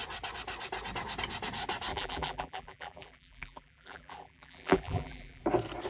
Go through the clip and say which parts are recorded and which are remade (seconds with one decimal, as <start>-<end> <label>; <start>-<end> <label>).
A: 0.0-1.9 recorded; 1.9-5.4 remade; 5.4-5.9 recorded